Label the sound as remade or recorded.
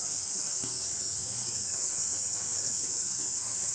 remade